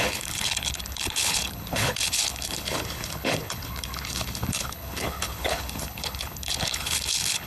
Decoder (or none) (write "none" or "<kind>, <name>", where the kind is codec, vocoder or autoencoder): codec, HILCodec